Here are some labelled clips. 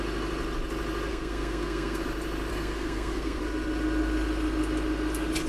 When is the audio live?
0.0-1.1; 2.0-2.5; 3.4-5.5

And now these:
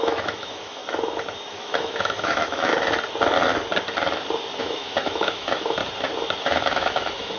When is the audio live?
0.8-1.5; 2.7-4.6; 5.8-6.4

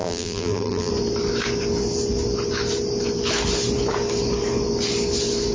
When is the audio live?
0.9-5.5

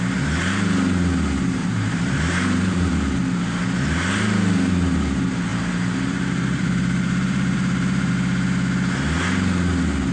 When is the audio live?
0.0-1.6; 2.9-5.5; 8.1-10.1

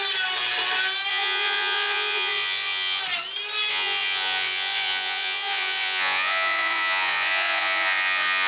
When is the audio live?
0.0-1.1; 3.0-3.7

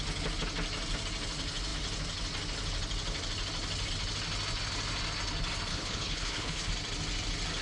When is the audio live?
0.0-5.7; 6.7-7.6

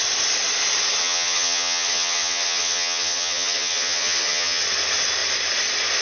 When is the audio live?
0.0-1.0; 4.6-6.0

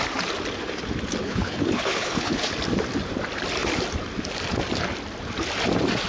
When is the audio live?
0.0-1.2; 2.5-6.1